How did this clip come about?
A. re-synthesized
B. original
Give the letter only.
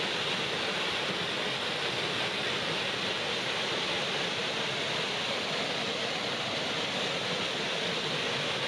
B